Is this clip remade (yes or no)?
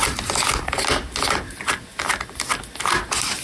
no